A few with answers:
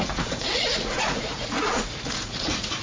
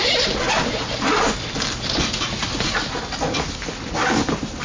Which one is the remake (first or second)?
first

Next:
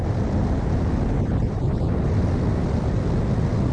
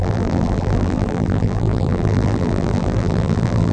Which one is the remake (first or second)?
second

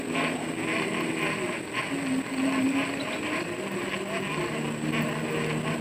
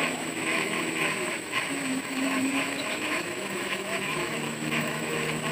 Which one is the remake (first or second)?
second